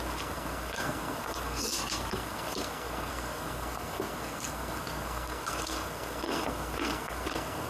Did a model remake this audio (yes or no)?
yes